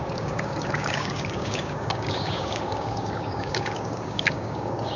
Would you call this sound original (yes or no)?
no